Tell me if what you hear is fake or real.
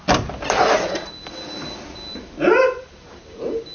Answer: real